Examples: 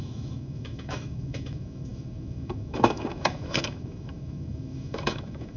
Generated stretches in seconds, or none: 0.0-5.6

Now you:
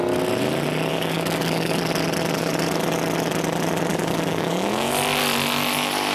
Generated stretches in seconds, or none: 0.9-1.8; 3.9-4.9

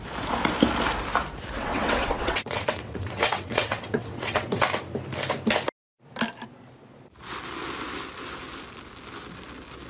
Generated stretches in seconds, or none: 1.6-4.6

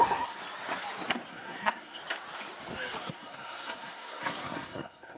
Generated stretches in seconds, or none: 0.0-0.4; 1.3-2.0; 3.0-5.2

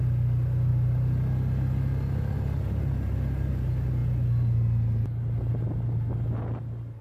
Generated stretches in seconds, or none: none

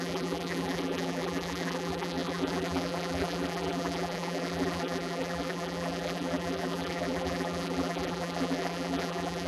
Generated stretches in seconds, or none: 0.0-9.5